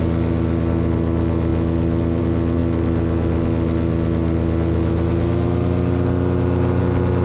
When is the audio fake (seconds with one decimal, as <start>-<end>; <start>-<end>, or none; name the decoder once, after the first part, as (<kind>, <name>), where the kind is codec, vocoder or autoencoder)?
none